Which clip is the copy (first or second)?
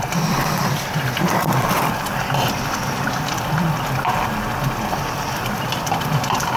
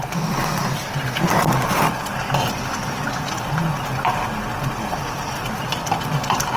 first